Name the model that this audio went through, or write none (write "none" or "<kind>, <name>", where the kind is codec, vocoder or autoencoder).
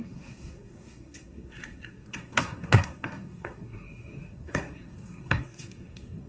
codec, SNAC